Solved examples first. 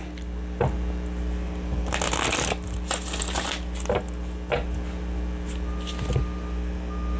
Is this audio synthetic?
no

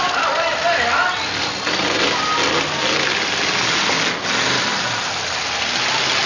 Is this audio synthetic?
no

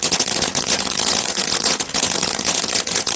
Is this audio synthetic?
yes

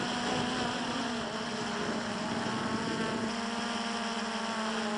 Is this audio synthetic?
no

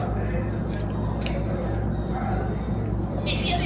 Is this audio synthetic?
no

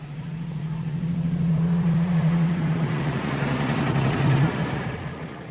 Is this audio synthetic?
yes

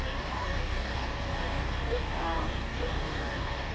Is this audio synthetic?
yes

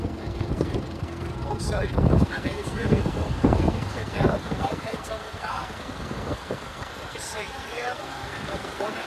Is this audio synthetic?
yes